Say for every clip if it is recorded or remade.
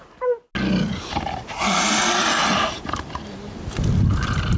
recorded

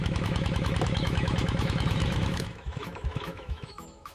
remade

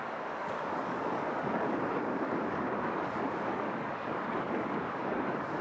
remade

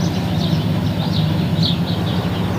recorded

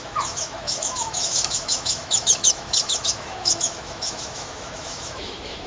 remade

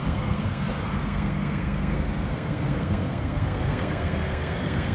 remade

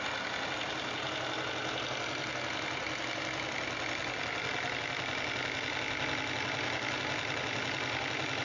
recorded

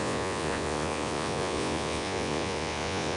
remade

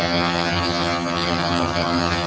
remade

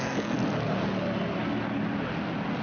recorded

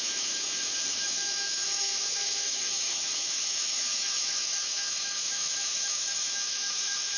remade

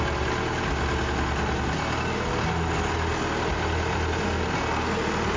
recorded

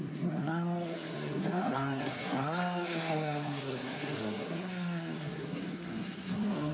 remade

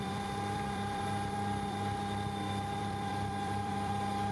remade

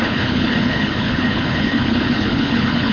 remade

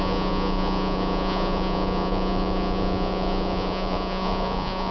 remade